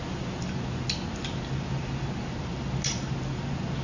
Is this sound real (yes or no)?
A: yes